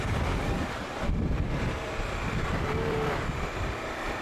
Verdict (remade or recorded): remade